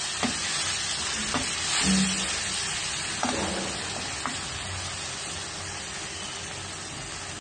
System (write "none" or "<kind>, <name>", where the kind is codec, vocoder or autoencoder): none